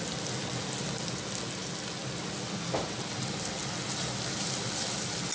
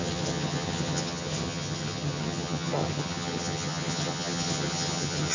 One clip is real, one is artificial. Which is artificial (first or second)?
second